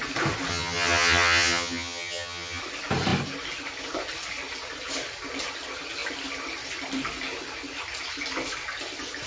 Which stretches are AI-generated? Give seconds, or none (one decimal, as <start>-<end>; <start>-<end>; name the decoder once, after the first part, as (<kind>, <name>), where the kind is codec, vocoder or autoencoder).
0.5-2.6 (vocoder, HiFi-GAN)